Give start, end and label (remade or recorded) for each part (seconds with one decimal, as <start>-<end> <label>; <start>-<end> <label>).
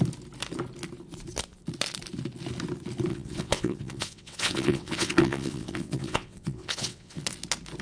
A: 0.0-3.1 recorded; 3.1-7.2 remade; 7.2-7.8 recorded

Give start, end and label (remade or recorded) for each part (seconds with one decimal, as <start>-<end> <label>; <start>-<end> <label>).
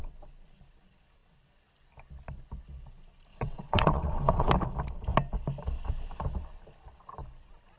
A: 0.0-3.3 recorded; 3.3-4.5 remade; 4.5-7.8 recorded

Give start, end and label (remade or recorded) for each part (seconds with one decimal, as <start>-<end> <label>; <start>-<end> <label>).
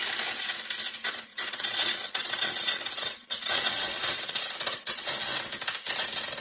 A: 0.0-1.3 recorded; 1.3-5.1 remade; 5.1-6.4 recorded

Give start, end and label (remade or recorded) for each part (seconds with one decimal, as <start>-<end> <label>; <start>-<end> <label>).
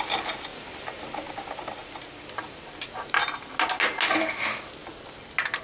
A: 0.0-5.6 recorded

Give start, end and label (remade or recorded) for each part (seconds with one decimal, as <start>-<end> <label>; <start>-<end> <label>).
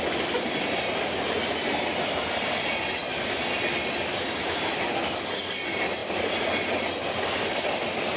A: 0.0-8.2 recorded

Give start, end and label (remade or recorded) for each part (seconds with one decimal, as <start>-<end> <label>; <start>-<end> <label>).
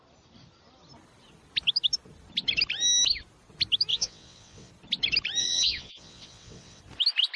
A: 0.0-3.9 recorded; 3.9-4.7 remade; 4.7-5.4 recorded; 5.4-6.8 remade; 6.8-7.4 recorded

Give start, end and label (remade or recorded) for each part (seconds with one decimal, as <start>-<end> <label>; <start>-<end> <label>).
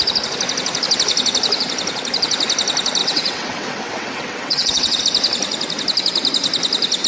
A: 0.0-3.0 recorded; 3.0-5.0 remade; 5.0-7.1 recorded